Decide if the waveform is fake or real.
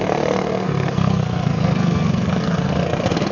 fake